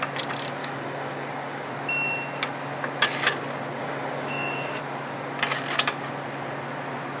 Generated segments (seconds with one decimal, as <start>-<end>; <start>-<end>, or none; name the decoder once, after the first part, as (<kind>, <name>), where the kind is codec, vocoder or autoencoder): 0.6-1.7 (codec, DAC); 3.8-4.8